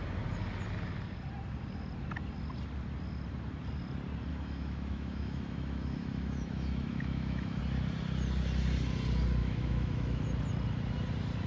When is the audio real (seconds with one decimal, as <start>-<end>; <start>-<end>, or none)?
0.0-4.3; 7.6-9.4; 10.2-11.5